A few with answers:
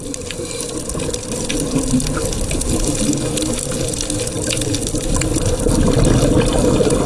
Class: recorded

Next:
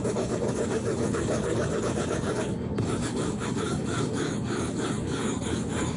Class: remade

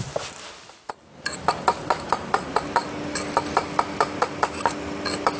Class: recorded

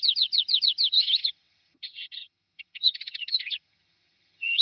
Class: remade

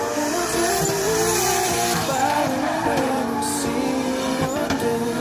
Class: remade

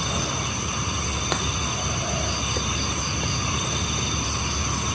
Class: recorded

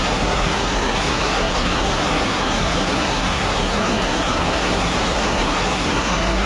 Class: remade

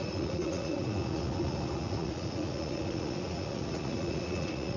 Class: remade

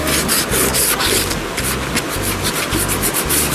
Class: recorded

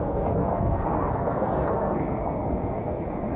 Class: remade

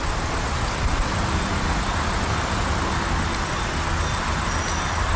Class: recorded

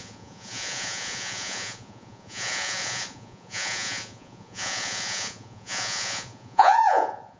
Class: remade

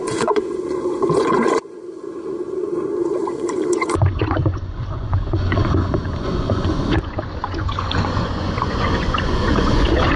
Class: remade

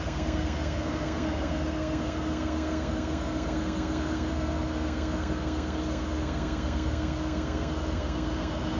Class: remade